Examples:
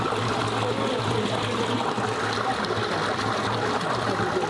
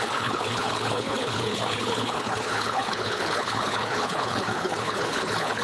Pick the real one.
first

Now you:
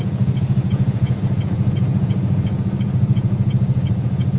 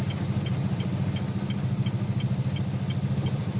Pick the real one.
second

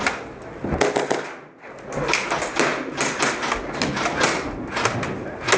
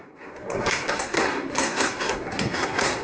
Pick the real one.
first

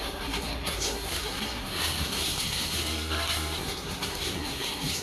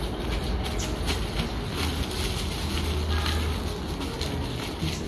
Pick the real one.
second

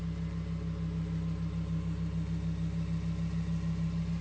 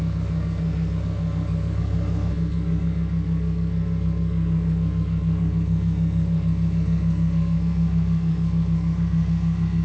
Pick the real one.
first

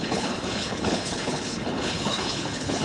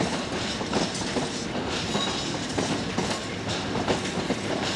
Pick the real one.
second